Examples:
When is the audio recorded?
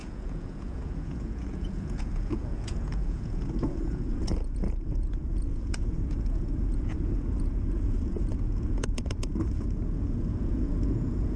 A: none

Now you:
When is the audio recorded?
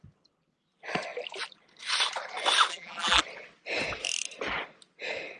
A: 0.0-2.7; 3.2-5.4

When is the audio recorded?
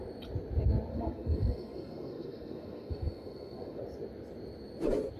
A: 0.0-0.9; 3.8-5.2